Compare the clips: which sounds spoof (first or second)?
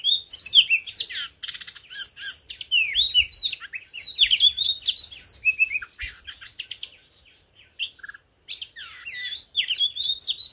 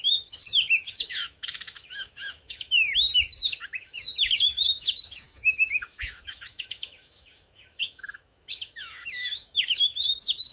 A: second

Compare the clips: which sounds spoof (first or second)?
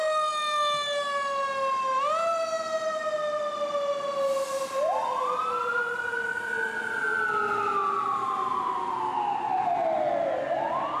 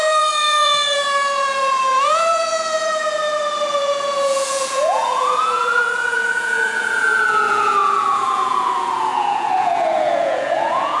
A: second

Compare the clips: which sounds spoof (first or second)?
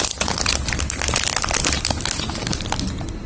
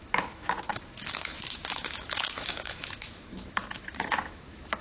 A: second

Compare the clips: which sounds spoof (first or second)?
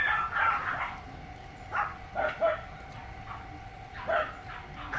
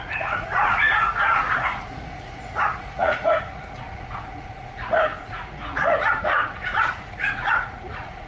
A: second